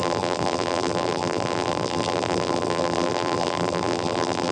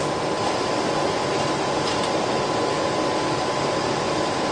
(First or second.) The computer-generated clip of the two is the first